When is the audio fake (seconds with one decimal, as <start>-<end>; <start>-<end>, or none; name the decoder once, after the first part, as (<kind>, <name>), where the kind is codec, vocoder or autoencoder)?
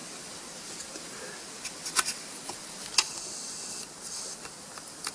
none